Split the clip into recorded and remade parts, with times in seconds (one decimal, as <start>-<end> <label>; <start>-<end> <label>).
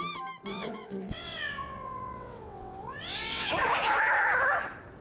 0.0-0.5 recorded; 0.5-3.5 remade; 3.5-5.0 recorded